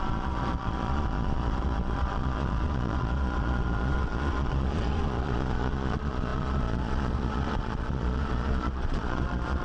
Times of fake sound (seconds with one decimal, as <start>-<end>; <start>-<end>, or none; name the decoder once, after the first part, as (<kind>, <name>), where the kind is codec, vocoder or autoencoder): 0.0-9.6 (vocoder, Vocos)